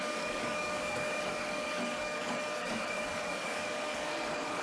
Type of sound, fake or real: fake